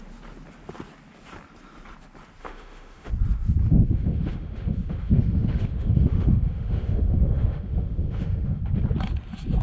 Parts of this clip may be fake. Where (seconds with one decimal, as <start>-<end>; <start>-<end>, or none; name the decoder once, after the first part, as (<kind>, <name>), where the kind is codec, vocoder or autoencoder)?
2.4-3.1 (autoencoder, DAC-VAE); 3.6-8.6